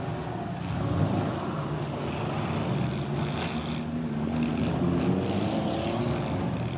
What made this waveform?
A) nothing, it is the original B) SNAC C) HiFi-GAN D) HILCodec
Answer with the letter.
A